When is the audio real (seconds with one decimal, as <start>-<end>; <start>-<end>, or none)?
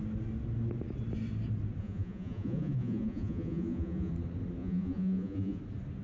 0.0-1.8; 4.1-4.6; 5.6-6.0